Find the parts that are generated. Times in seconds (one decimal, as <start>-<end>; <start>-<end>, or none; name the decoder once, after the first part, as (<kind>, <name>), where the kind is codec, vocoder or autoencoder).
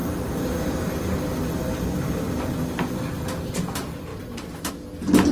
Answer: none